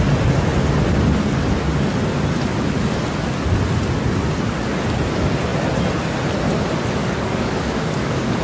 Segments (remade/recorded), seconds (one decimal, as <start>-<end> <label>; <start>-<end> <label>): 0.0-7.0 recorded; 7.0-8.4 remade